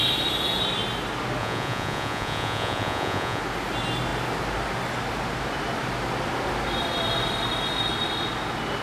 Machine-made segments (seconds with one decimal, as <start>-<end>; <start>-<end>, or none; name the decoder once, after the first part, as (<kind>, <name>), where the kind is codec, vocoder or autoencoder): 1.4-3.4 (vocoder, Vocos)